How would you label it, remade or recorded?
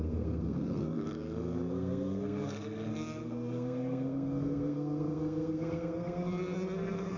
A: remade